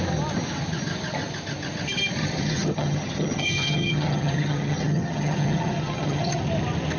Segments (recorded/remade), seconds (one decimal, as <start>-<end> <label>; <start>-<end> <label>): 0.0-2.2 recorded; 2.2-6.4 remade; 6.4-7.0 recorded